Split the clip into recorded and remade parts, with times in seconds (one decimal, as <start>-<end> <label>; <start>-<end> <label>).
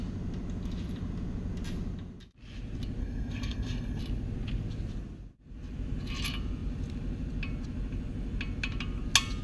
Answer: 0.0-3.0 recorded; 3.0-4.0 remade; 4.0-9.4 recorded